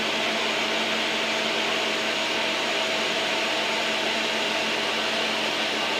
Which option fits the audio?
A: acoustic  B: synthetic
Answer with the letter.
A